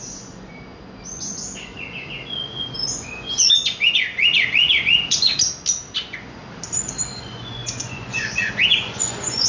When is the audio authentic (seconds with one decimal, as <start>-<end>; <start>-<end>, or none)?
5.3-5.9; 6.4-7.0